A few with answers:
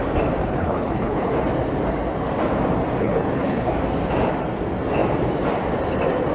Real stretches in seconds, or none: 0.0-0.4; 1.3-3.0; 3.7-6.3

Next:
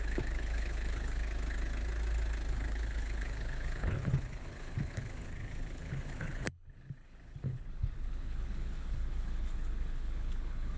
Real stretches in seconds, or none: 1.2-2.5

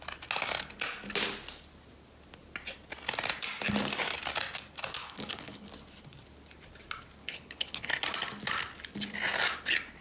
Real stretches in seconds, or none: 0.0-5.0; 5.7-7.2; 7.9-10.0

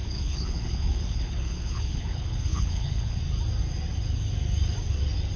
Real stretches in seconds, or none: 3.2-5.4

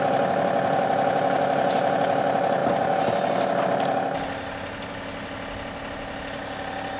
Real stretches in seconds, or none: 0.0-7.0

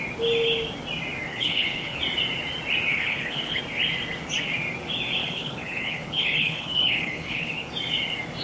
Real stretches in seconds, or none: 0.0-1.3; 2.0-2.9; 3.6-5.2; 7.7-8.4

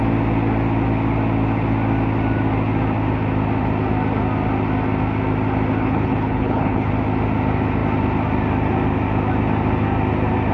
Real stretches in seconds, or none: 0.0-5.8; 6.9-10.5